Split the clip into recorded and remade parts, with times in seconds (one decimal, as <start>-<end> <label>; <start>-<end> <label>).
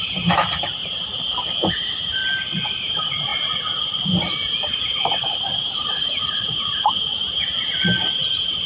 0.0-2.2 remade; 2.2-2.7 recorded; 2.7-8.7 remade